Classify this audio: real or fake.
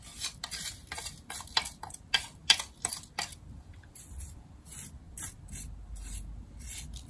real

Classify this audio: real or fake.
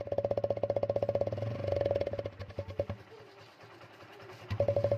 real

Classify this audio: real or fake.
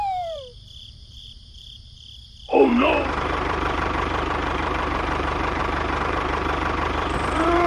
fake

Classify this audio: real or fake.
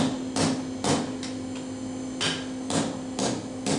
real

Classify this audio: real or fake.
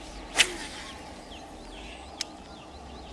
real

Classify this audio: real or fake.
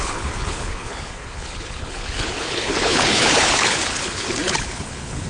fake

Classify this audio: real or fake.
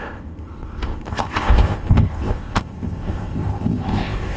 fake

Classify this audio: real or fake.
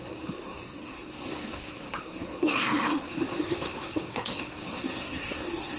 fake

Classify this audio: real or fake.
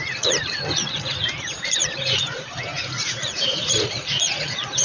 fake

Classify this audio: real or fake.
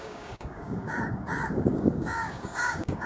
fake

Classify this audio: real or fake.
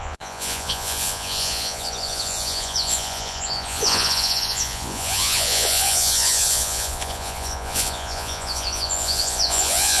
fake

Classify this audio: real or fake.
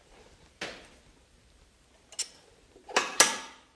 real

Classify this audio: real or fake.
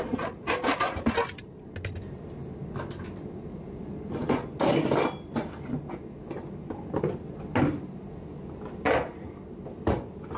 real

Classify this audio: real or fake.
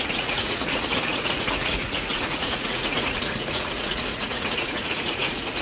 fake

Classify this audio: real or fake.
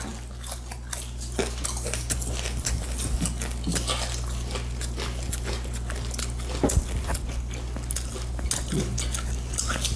real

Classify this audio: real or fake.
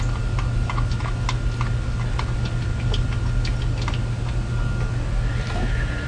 real